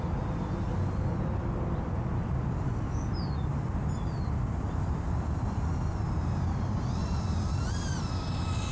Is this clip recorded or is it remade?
recorded